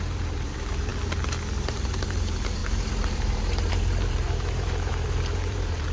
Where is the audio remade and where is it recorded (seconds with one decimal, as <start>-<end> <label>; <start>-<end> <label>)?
0.0-0.9 remade; 0.9-1.6 recorded; 1.6-5.9 remade